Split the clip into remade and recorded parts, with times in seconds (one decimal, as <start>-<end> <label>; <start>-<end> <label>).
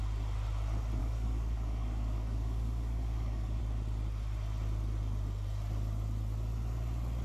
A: 0.0-1.0 recorded; 1.0-3.6 remade; 3.6-7.2 recorded